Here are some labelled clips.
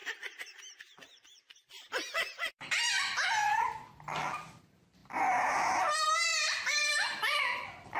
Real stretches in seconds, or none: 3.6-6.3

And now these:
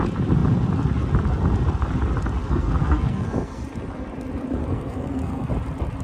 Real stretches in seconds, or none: 0.0-2.4; 3.6-4.6; 5.5-6.0

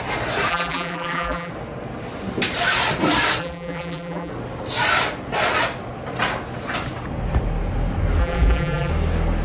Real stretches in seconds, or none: 0.0-0.5; 1.5-3.4; 4.3-8.2; 8.9-9.4

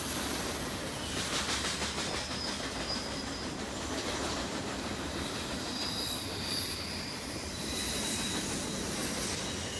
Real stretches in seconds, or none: 1.8-2.9; 9.0-9.8

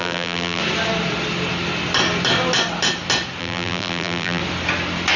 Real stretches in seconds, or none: 0.6-3.4; 4.4-5.2

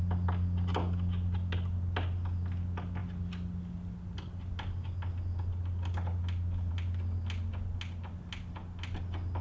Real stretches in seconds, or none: 0.0-9.4

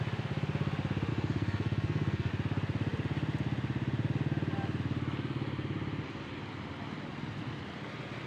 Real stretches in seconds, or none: 0.0-1.1; 2.3-8.3